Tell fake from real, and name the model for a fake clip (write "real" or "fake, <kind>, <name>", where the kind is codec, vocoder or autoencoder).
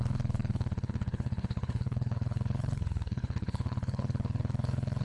fake, codec, HILCodec